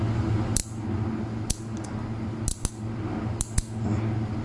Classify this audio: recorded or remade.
recorded